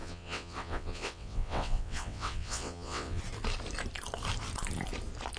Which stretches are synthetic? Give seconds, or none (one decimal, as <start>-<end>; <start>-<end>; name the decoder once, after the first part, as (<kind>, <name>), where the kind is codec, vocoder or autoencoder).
0.0-3.2 (vocoder, WaveNeXt)

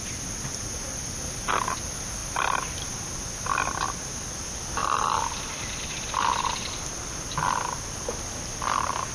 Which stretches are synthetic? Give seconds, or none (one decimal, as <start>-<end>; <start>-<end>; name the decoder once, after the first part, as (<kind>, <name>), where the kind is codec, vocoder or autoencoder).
none

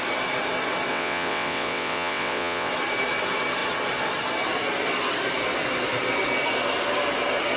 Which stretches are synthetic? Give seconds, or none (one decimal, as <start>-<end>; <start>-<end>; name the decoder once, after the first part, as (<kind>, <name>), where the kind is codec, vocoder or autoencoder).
0.9-2.7 (vocoder, WaveNeXt)

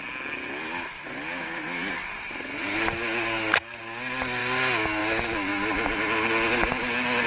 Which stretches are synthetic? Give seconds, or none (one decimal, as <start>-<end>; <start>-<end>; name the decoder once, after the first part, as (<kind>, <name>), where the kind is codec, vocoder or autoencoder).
none

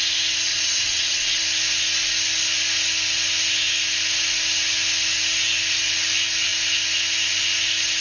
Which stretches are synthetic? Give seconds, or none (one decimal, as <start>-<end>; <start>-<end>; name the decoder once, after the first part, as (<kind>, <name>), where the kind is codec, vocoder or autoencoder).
0.5-1.4 (vocoder, WaveNeXt)